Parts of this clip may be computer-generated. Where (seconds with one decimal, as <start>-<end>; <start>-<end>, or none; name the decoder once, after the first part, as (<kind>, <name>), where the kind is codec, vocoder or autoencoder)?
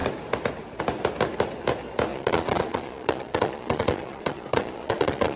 2.1-5.4 (vocoder, Vocos)